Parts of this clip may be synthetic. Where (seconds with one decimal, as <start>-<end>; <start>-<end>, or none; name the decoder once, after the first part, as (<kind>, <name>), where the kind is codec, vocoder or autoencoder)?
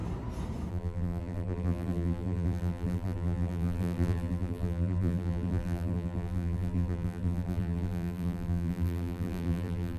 0.7-10.0 (vocoder, BigVGAN v2)